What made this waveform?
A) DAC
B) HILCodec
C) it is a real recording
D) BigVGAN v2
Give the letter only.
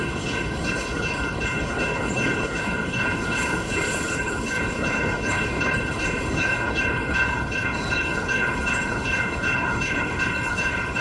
B